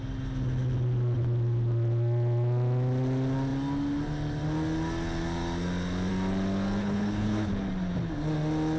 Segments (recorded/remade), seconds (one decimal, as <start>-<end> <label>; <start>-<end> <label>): 0.0-6.8 recorded; 6.8-7.5 remade; 7.5-8.8 recorded